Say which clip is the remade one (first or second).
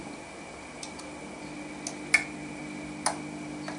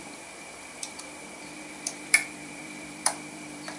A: second